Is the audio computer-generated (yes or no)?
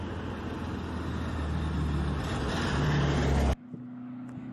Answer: no